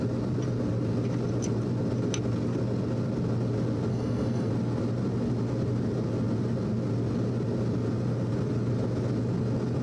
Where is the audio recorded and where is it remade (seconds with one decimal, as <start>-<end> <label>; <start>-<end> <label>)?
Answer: 0.0-3.9 recorded; 3.9-4.5 remade; 4.5-9.8 recorded